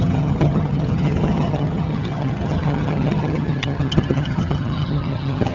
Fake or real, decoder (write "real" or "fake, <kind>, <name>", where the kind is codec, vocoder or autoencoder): fake, vocoder, HiFi-GAN